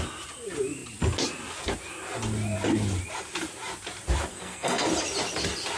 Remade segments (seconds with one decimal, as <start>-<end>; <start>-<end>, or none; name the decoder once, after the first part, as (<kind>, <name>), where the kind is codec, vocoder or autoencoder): 4.3-4.9 (codec, SNAC)